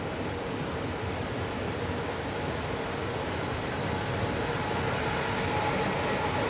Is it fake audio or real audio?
real